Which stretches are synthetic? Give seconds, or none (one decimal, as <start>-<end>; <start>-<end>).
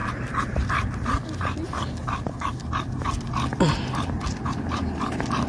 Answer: none